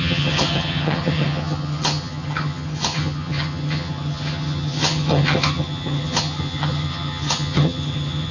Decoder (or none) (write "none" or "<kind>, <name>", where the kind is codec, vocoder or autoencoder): vocoder, HiFi-GAN